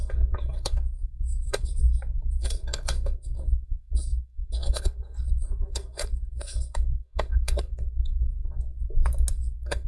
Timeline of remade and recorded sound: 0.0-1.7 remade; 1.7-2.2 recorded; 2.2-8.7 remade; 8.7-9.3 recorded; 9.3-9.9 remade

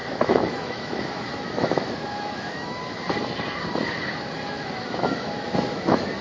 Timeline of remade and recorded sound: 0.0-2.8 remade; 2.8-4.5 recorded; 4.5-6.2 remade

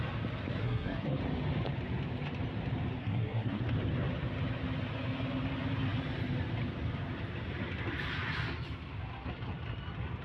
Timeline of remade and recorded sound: 0.0-0.6 recorded; 0.6-1.2 remade; 1.2-3.0 recorded; 3.0-3.6 remade; 3.6-10.2 recorded

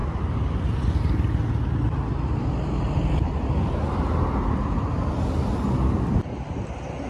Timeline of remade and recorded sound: 0.0-7.1 recorded

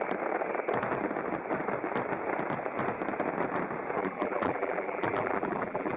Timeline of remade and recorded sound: 0.0-4.0 recorded; 4.0-6.0 remade

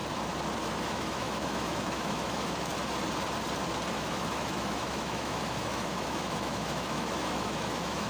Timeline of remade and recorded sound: 0.0-0.6 recorded; 0.6-2.7 remade; 2.7-3.9 recorded; 3.9-8.1 remade